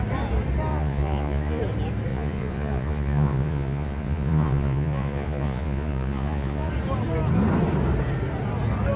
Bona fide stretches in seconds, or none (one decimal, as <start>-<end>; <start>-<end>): 0.0-0.7; 1.6-2.1; 6.7-9.0